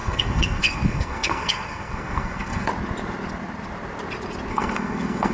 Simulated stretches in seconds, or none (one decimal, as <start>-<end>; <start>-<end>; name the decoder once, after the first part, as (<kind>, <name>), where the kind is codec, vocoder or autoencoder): 0.0-2.7 (codec, SNAC); 4.5-5.3